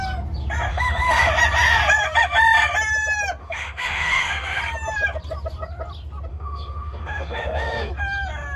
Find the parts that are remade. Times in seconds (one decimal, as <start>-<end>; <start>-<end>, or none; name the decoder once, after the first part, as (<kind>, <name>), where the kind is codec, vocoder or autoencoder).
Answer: 0.7-1.3 (autoencoder, DAC-VAE); 3.4-4.6; 6.3-7.9